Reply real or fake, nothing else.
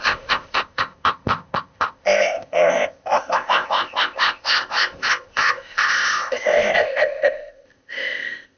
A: fake